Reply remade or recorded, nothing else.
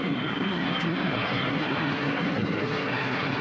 remade